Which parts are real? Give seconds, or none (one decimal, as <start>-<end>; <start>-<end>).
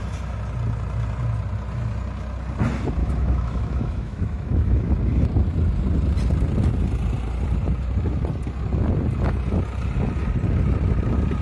0.0-3.0; 4.9-11.4